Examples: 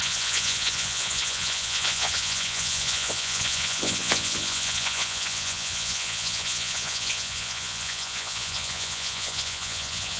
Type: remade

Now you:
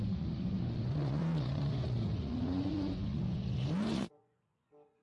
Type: remade